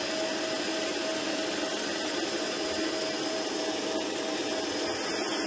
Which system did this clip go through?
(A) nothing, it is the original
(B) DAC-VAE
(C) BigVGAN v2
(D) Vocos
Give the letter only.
A